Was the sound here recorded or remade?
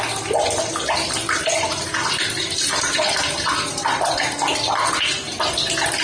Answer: recorded